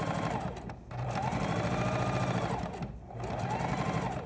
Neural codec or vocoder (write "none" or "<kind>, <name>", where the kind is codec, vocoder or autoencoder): none